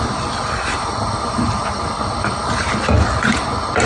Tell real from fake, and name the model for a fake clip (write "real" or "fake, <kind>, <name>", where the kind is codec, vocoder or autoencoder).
real